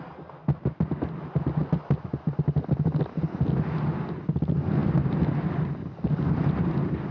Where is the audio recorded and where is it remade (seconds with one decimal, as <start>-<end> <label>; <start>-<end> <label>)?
0.0-7.1 recorded